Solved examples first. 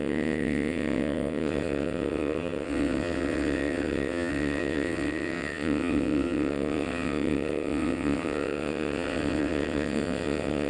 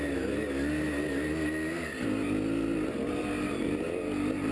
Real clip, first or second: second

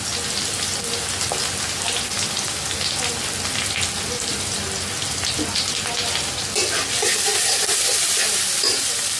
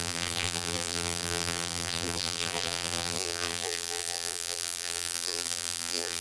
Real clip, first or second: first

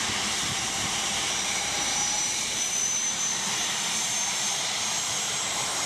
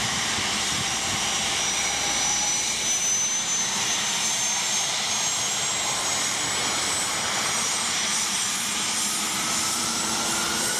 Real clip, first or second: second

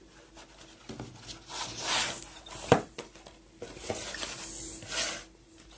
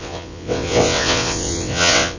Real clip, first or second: first